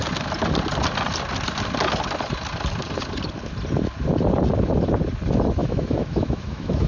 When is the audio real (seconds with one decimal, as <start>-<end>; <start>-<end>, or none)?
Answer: 0.0-5.6